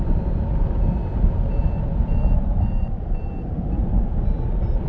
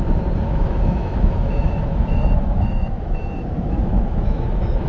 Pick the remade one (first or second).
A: second